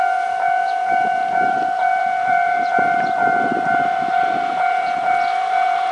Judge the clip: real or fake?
fake